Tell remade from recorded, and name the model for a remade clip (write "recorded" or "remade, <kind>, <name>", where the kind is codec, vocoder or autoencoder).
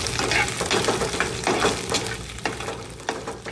recorded